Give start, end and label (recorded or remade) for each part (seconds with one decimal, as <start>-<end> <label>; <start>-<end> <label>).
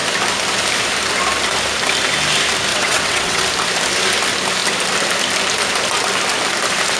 0.0-2.7 recorded; 2.7-3.4 remade; 3.4-7.0 recorded